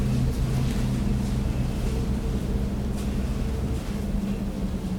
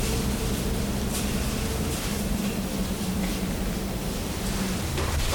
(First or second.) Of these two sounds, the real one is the first